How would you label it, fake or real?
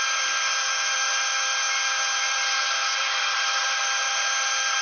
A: real